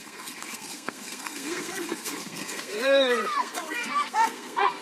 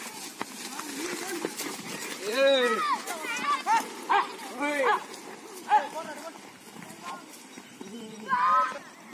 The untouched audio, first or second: second